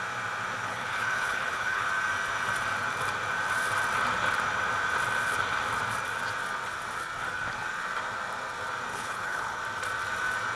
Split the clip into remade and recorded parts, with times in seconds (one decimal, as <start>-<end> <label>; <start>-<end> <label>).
0.0-0.6 recorded; 0.6-1.9 remade; 1.9-8.9 recorded; 8.9-9.6 remade; 9.6-10.6 recorded